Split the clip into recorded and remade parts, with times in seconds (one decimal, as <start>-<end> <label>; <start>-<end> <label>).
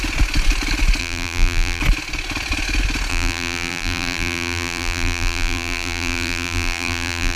0.0-1.0 recorded; 1.0-1.8 remade; 1.8-3.1 recorded; 3.1-7.4 remade